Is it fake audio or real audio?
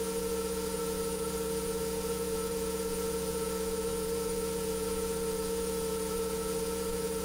fake